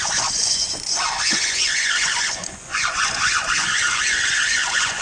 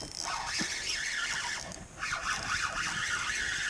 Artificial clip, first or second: first